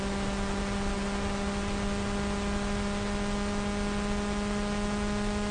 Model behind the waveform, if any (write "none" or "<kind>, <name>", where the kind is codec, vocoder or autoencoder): none